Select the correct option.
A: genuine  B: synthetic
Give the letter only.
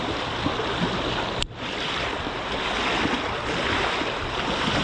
A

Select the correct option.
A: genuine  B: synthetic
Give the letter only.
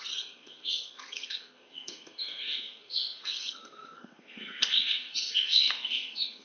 B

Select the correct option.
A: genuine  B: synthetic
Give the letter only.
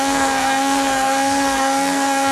B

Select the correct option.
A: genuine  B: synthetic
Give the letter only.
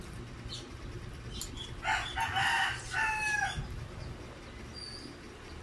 A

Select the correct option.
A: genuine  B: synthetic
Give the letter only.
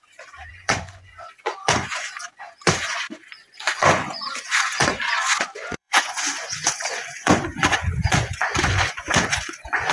B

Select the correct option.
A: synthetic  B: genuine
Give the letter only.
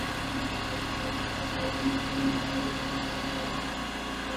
B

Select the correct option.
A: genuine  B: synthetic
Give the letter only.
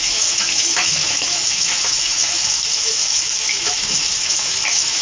B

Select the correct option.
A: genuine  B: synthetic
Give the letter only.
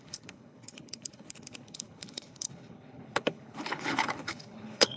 B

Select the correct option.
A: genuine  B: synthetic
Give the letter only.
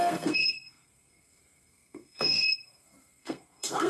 B